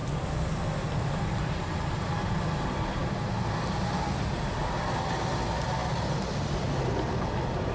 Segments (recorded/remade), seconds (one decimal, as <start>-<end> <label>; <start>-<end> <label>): 0.0-7.7 recorded